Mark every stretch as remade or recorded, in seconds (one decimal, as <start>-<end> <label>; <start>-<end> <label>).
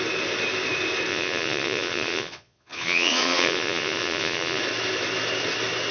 0.0-1.1 recorded; 1.1-4.6 remade; 4.6-5.9 recorded